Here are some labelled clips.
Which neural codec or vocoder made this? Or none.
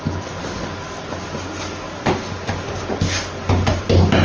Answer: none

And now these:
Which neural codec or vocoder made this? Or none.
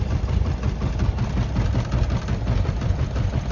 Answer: none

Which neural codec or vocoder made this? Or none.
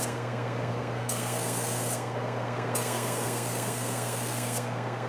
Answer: codec, SNAC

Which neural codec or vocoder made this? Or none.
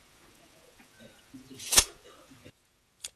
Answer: vocoder, Vocos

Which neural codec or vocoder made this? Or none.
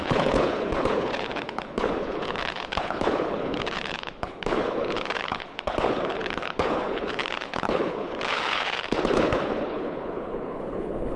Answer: codec, HILCodec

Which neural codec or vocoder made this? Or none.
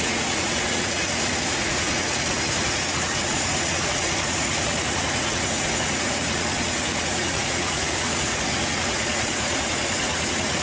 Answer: vocoder, Vocos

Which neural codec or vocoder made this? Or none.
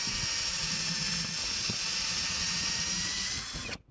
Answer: vocoder, Vocos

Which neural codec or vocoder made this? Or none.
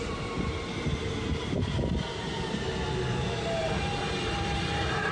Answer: vocoder, BigVGAN v2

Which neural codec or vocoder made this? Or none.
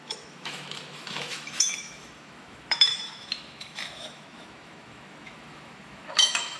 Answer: autoencoder, DAC-VAE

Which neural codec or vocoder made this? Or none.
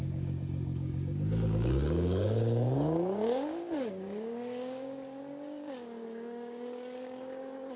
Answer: codec, DAC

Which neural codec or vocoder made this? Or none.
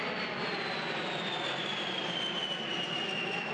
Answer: none